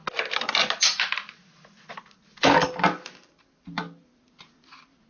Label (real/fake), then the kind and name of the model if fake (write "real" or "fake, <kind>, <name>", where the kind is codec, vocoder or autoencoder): real